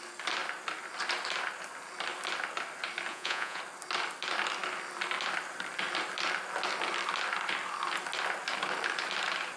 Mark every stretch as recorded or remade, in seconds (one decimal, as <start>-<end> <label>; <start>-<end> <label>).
0.0-3.1 recorded; 3.1-3.6 remade; 3.6-9.6 recorded